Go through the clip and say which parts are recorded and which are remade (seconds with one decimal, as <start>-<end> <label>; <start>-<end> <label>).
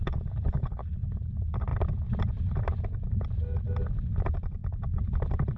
0.0-1.2 remade; 1.2-5.6 recorded